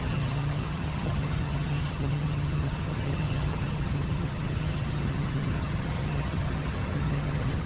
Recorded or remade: remade